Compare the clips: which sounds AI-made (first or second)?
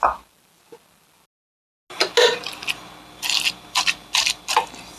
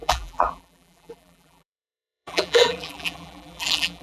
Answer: second